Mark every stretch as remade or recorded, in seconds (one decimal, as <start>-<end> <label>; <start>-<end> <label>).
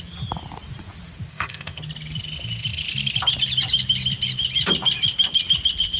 0.0-1.3 recorded; 1.3-1.8 remade; 1.8-6.0 recorded